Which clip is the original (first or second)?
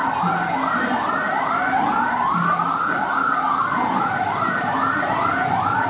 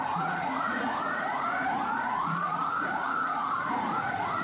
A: first